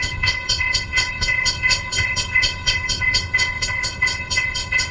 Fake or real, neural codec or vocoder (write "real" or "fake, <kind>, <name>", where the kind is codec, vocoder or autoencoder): fake, codec, ZipCodec